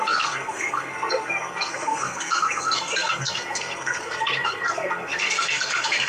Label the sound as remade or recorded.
remade